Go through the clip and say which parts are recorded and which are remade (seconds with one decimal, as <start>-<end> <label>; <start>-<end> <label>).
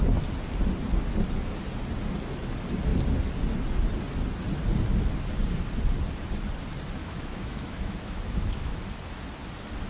0.0-7.0 recorded; 7.0-8.8 remade; 8.8-9.9 recorded